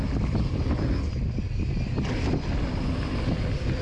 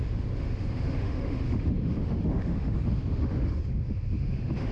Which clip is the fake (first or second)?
second